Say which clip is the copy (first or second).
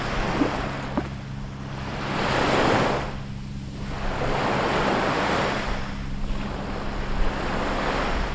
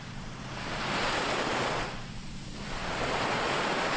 second